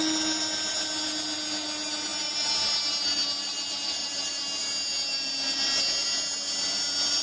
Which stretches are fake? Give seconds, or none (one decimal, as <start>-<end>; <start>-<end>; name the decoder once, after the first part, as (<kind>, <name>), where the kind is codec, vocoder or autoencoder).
none